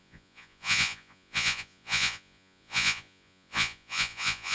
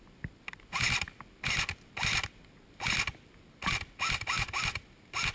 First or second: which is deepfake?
first